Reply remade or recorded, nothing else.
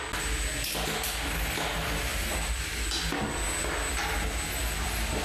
recorded